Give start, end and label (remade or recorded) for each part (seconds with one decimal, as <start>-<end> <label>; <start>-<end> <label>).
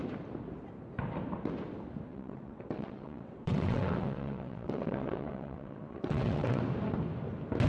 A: 0.0-2.1 recorded; 2.1-6.6 remade; 6.6-7.7 recorded